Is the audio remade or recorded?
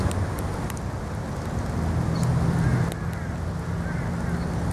recorded